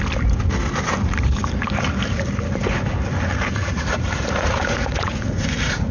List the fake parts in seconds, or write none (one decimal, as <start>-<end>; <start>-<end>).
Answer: 3.6-5.9